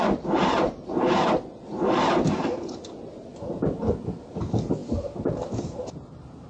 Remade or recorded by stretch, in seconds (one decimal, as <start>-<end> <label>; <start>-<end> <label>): 0.0-6.5 recorded